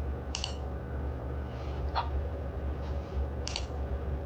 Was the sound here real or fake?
real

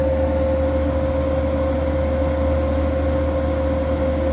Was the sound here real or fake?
real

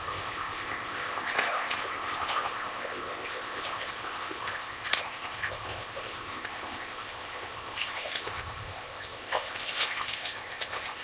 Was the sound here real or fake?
fake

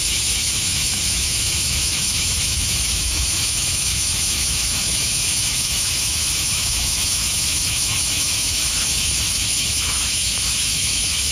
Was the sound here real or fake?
fake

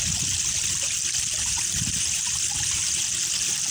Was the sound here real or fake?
real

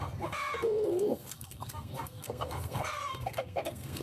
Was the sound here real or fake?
fake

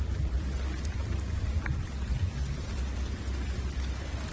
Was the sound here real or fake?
fake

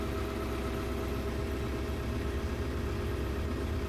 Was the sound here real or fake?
real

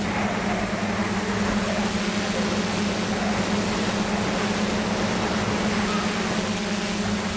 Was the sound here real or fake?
real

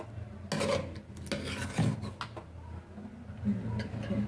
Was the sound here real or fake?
real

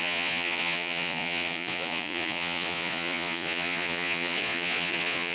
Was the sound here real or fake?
fake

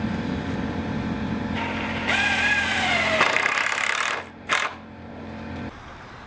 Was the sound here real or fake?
fake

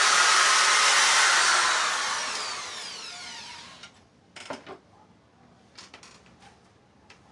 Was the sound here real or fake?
real